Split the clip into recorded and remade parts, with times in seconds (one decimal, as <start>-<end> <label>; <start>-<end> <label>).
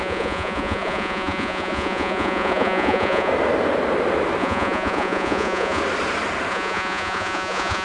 0.0-3.3 remade; 3.3-4.4 recorded; 4.4-5.8 remade; 5.8-6.5 recorded; 6.5-7.8 remade